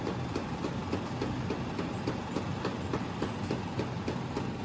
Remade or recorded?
recorded